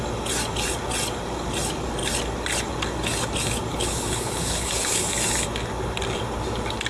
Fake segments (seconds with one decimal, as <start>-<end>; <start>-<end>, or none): 3.7-5.1